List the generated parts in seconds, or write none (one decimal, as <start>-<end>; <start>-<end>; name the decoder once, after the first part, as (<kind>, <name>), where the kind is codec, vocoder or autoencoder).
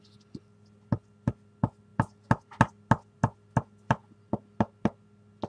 none